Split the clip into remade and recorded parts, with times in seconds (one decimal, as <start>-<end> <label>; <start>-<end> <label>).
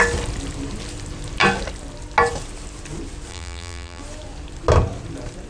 0.0-3.3 recorded; 3.3-4.0 remade; 4.0-5.5 recorded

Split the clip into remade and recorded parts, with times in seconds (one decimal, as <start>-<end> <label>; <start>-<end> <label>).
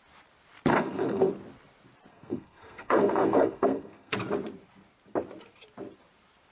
0.0-0.7 recorded; 0.7-1.3 remade; 1.3-2.1 recorded; 2.1-4.1 remade; 4.1-6.5 recorded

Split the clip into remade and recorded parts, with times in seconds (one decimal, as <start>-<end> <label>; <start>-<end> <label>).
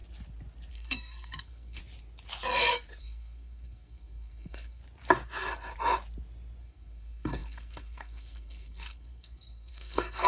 0.0-0.7 recorded; 0.7-1.8 remade; 1.8-3.0 recorded; 3.0-4.8 remade; 4.8-6.6 recorded; 6.6-10.3 remade